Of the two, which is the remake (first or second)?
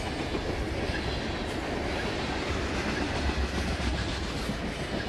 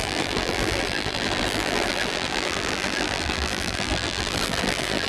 second